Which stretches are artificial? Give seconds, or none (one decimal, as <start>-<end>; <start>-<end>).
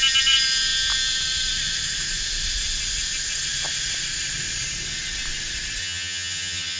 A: 5.8-6.8